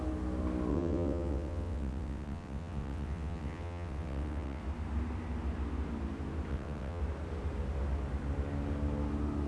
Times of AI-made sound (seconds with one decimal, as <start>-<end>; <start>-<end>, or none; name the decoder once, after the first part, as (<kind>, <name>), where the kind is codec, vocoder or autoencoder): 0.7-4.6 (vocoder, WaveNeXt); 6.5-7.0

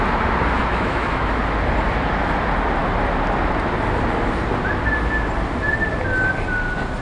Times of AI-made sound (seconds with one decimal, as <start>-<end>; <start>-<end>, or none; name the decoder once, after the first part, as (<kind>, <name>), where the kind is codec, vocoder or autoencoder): 0.6-1.4 (autoencoder, DAC-VAE)

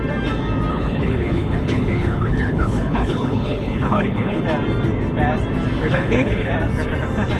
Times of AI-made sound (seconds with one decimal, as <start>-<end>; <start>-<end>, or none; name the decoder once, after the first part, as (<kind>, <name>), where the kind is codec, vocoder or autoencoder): 0.7-4.4 (codec, HILCodec); 5.8-6.5

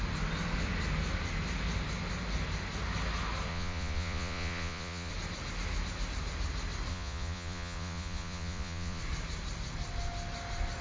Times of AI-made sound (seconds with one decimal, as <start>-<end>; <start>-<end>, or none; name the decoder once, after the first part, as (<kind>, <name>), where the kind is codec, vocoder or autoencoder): 3.5-5.1 (vocoder, Vocos); 6.9-9.0

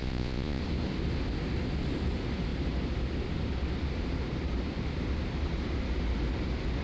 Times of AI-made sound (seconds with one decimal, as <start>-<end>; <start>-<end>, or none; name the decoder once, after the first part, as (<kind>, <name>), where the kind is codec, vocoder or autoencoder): 0.0-0.6 (vocoder, Vocos)